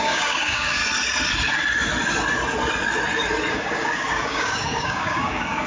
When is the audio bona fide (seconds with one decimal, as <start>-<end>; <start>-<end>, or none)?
0.8-3.5